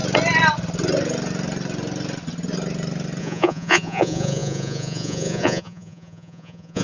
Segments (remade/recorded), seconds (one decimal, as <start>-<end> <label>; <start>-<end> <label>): 0.0-3.2 recorded; 3.2-6.8 remade